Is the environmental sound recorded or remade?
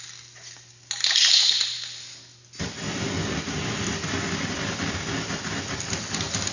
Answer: recorded